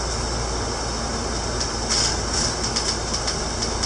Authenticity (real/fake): real